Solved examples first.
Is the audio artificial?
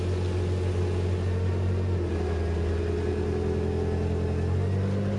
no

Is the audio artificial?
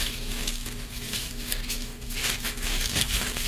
yes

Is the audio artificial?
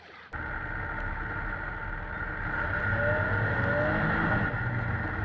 no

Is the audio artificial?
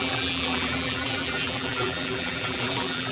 yes